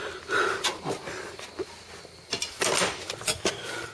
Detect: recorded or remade recorded